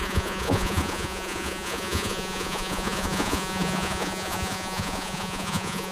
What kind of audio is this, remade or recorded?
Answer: remade